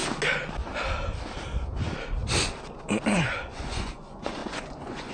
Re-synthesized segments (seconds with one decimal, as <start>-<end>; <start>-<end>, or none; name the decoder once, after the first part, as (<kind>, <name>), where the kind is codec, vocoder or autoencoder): 3.1-5.1 (vocoder, Vocos)